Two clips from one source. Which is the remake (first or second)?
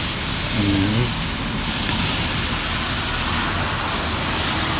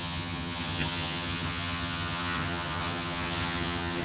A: second